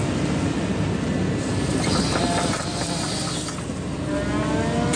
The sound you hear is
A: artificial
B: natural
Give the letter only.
B